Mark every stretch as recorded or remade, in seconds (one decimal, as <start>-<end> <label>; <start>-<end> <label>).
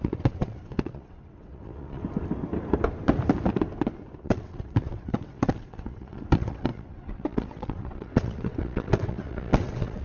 0.0-2.0 remade; 2.0-4.2 recorded; 4.2-10.0 remade